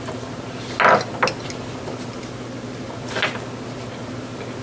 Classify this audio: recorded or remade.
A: recorded